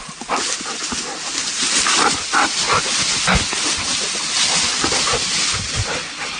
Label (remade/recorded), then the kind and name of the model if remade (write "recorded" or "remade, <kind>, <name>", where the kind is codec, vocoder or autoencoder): recorded